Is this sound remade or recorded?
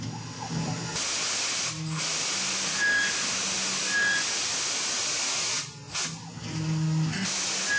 recorded